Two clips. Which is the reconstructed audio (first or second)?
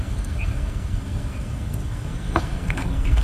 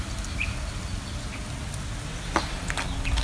first